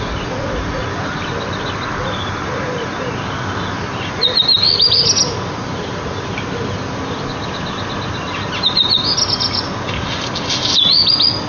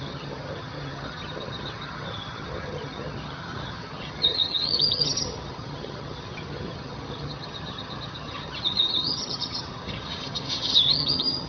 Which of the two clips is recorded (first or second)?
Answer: first